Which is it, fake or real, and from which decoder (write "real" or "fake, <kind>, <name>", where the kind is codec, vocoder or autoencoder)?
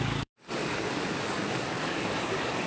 fake, codec, DAC